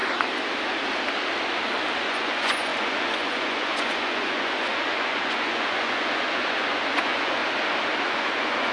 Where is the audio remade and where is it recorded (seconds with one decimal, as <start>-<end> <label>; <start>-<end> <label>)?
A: 0.0-2.0 recorded; 2.0-7.4 remade; 7.4-8.0 recorded; 8.0-8.7 remade